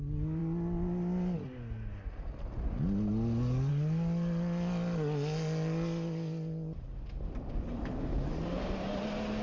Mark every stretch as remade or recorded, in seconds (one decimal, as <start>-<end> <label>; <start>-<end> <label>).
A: 0.0-9.4 recorded